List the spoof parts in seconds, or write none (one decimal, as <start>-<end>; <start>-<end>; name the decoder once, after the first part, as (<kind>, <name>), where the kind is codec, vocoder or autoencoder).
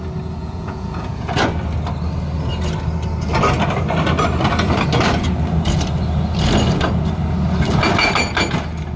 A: 0.4-1.3 (vocoder, Vocos)